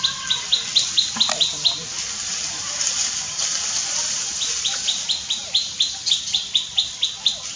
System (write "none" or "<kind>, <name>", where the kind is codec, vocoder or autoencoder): none